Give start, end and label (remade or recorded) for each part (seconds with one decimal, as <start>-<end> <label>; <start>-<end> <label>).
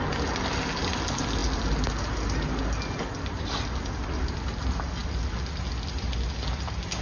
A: 0.0-7.0 recorded